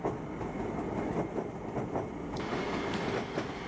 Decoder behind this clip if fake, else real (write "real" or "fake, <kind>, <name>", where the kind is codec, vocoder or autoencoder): real